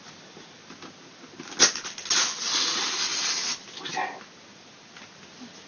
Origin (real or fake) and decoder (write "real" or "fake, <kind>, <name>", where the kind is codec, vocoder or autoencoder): real